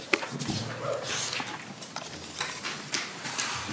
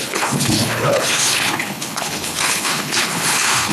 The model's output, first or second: second